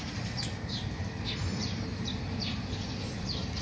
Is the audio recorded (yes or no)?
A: yes